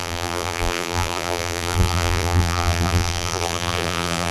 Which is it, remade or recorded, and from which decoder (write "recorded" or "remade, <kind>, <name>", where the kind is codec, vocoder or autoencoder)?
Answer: remade, vocoder, BigVGAN v2